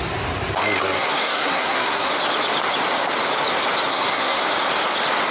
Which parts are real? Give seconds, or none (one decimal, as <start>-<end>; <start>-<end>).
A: 0.0-0.8; 2.1-3.9; 4.4-5.3